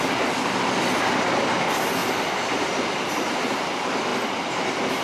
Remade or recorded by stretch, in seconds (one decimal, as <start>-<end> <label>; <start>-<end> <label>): 0.0-4.1 recorded; 4.1-5.0 remade